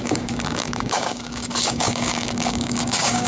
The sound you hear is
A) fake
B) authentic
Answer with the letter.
A